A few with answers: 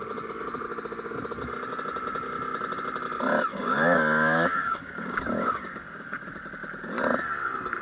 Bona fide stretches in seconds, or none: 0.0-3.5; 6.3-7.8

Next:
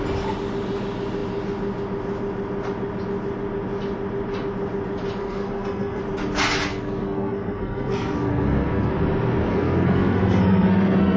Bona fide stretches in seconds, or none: 0.0-5.2; 6.0-6.7; 8.9-9.5

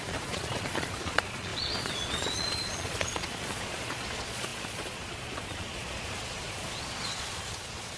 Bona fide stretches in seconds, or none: none

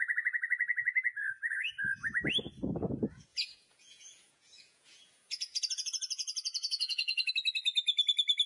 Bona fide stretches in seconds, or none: 0.0-3.3; 7.3-8.5

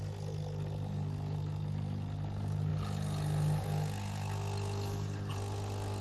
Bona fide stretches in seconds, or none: 0.0-6.0

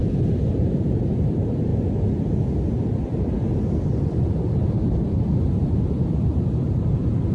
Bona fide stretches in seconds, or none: 0.0-0.6; 1.7-5.5

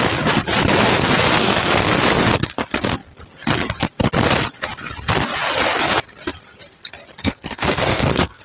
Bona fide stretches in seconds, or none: 0.0-1.4; 2.0-7.2